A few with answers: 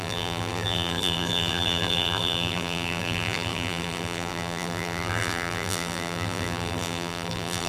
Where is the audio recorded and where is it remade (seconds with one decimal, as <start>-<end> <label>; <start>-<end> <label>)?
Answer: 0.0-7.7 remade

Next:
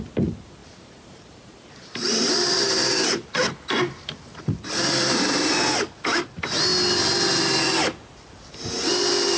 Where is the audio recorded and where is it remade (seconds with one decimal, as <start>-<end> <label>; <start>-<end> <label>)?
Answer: 0.0-0.6 recorded; 0.6-5.5 remade; 5.5-9.4 recorded

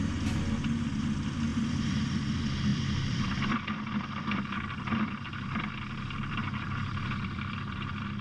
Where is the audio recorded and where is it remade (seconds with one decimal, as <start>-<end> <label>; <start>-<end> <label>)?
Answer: 0.0-1.5 recorded; 1.5-2.0 remade; 2.0-2.7 recorded; 2.7-7.6 remade; 7.6-8.2 recorded

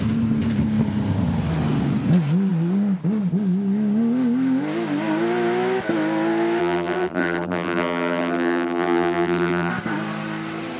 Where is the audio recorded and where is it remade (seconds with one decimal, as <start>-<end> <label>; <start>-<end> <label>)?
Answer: 0.0-6.6 recorded; 6.6-9.7 remade; 9.7-10.8 recorded